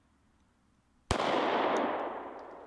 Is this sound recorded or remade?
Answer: recorded